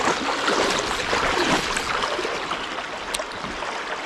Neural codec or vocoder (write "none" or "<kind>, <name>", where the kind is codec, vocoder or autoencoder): none